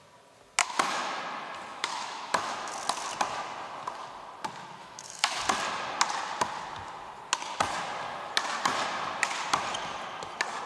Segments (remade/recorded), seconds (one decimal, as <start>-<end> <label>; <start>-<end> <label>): 0.0-0.6 recorded; 0.6-1.2 remade; 1.2-1.7 recorded; 1.7-2.7 remade; 2.7-4.8 recorded; 4.8-5.4 remade; 5.4-10.7 recorded